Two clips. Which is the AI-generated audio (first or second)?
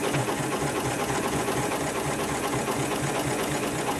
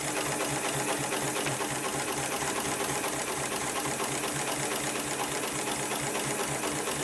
first